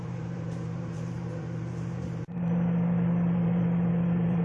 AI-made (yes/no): yes